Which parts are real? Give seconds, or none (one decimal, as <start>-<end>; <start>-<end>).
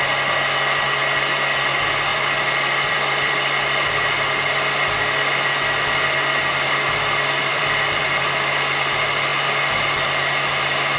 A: 0.0-2.1; 5.0-7.5; 8.0-11.0